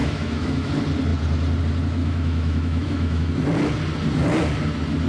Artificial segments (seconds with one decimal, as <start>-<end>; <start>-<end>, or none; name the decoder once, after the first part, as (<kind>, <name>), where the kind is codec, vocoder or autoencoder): 0.0-0.7 (autoencoder, DAC-VAE); 2.0-3.3